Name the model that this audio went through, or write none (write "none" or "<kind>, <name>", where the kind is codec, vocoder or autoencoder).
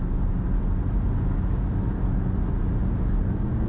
none